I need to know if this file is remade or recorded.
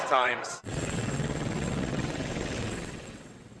remade